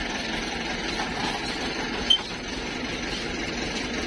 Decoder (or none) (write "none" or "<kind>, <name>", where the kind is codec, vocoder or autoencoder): none